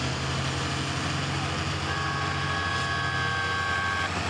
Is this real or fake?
real